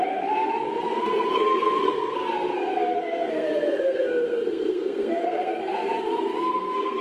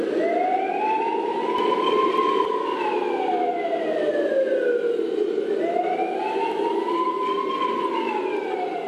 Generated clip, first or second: first